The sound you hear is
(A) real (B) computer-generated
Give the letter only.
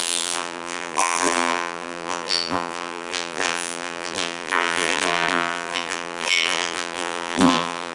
B